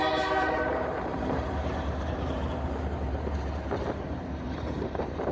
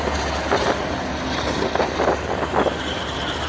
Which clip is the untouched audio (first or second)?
second